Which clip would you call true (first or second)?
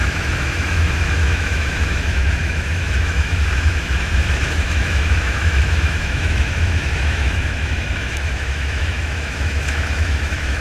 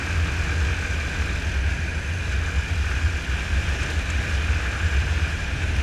second